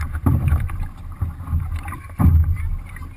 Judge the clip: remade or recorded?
recorded